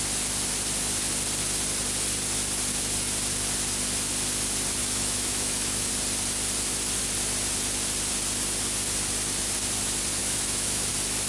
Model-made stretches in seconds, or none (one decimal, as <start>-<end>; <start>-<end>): 4.8-5.9; 10.2-10.9